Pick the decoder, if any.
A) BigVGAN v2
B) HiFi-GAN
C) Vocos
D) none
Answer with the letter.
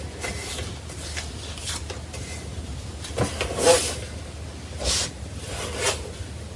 D